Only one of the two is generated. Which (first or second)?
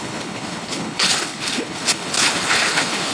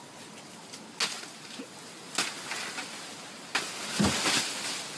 first